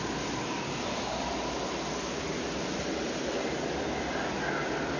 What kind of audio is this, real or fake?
real